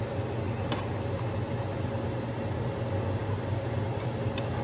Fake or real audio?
real